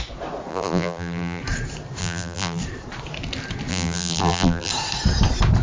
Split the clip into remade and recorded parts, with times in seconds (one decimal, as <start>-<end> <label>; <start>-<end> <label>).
0.0-0.5 recorded; 0.5-1.4 remade; 1.4-2.0 recorded; 2.0-2.6 remade; 2.6-3.7 recorded; 3.7-4.7 remade; 4.7-5.6 recorded